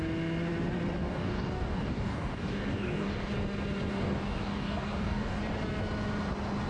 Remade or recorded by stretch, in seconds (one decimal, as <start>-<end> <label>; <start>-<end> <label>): 0.0-1.0 recorded; 1.0-3.3 remade; 3.3-3.9 recorded; 3.9-5.4 remade; 5.4-6.7 recorded